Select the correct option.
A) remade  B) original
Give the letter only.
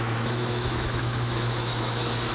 A